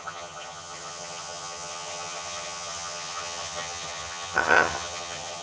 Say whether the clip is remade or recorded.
remade